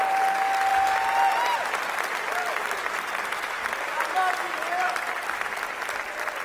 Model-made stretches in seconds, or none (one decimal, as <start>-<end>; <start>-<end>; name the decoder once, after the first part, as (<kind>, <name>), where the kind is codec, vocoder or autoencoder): none